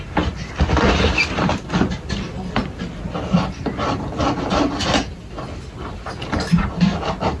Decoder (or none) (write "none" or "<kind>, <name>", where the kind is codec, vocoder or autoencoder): none